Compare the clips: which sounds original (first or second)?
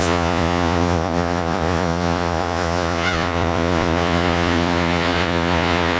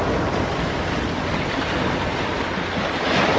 second